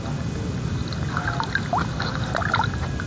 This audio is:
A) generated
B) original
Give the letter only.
B